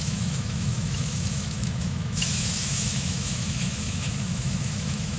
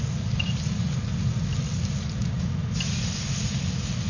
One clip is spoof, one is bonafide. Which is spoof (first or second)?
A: first